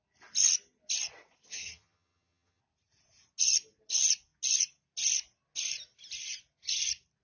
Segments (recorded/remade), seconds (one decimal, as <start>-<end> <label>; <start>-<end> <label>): 0.0-1.5 recorded; 1.5-2.6 remade; 2.6-7.2 recorded